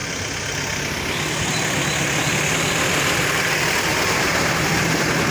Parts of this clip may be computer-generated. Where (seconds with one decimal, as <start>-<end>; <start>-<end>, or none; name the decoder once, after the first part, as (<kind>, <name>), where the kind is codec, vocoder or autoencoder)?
3.9-5.3 (vocoder, BigVGAN v2)